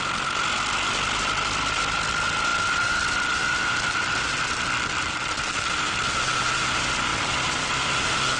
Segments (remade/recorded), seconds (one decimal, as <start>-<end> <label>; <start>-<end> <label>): 0.0-2.5 recorded; 2.5-3.1 remade; 3.1-7.1 recorded; 7.1-7.8 remade; 7.8-8.4 recorded